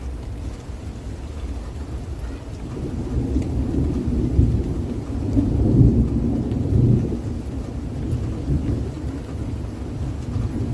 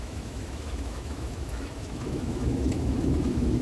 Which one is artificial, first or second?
second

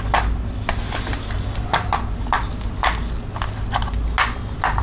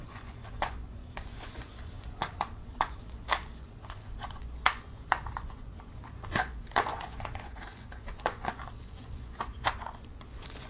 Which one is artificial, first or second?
second